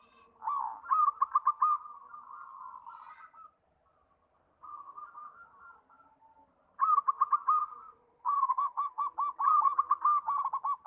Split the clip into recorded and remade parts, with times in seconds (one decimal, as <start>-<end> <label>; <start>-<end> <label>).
0.0-7.6 recorded; 7.6-9.0 remade; 9.0-10.9 recorded